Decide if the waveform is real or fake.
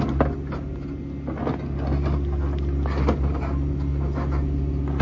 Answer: real